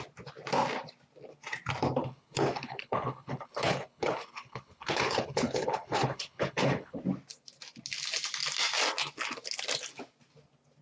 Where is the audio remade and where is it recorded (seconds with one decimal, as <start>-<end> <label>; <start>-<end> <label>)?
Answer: 0.0-2.0 recorded; 2.0-7.0 remade; 7.0-10.8 recorded

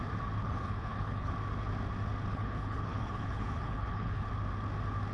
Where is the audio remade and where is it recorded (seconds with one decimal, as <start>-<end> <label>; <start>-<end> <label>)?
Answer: 0.0-0.4 recorded; 0.4-1.3 remade; 1.3-2.3 recorded; 2.3-4.3 remade; 4.3-5.1 recorded